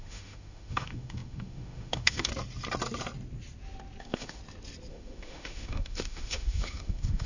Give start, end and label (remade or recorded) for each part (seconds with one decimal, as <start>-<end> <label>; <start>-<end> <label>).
0.0-2.3 remade; 2.3-4.0 recorded; 4.0-4.4 remade; 4.4-4.9 recorded; 4.9-7.3 remade